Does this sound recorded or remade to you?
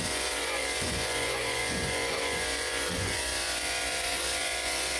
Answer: remade